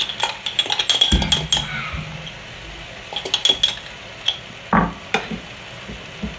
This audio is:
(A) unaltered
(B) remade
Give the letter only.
A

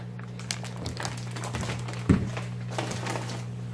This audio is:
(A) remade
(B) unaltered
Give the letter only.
B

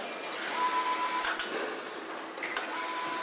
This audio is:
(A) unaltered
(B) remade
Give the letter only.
A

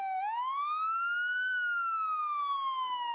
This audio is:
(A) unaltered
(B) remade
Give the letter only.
A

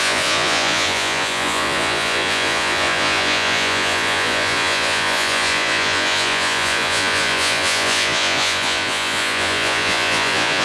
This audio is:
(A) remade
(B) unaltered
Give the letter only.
A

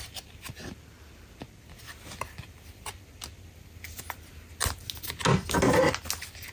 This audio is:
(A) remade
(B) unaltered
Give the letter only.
B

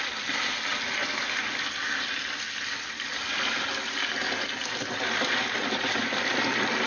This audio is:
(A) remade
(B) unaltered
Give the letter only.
B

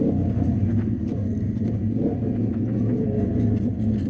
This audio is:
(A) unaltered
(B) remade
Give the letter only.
A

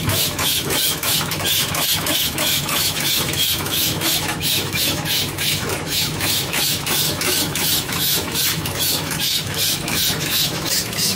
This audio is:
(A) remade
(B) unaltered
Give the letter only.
A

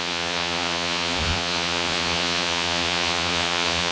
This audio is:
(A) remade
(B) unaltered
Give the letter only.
A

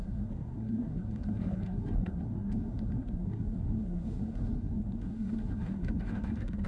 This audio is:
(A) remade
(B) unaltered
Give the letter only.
A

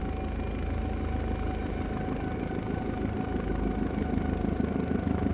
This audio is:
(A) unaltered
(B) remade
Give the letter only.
A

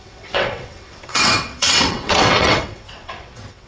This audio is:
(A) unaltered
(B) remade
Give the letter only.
B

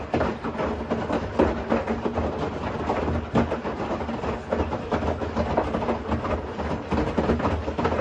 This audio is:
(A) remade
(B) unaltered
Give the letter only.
B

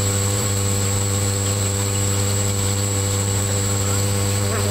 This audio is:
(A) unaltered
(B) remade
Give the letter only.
B